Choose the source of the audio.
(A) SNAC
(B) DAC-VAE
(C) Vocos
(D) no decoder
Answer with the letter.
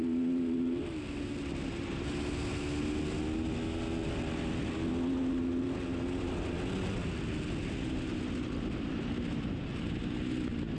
D